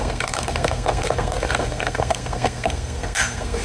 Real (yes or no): no